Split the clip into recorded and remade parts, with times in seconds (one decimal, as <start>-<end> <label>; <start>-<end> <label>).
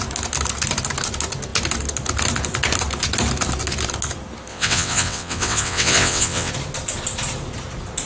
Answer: 0.0-4.5 recorded; 4.5-6.5 remade; 6.5-8.1 recorded